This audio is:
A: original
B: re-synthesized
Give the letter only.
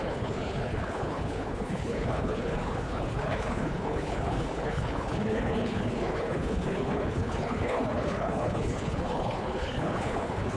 B